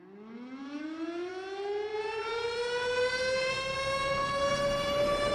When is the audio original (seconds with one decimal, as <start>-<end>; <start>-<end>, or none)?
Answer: 0.0-0.6; 1.3-1.9; 3.5-4.5